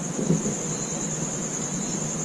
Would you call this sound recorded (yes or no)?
yes